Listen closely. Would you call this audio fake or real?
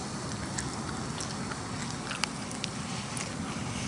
real